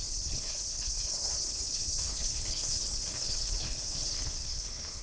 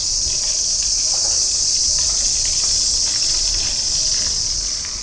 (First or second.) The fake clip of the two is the first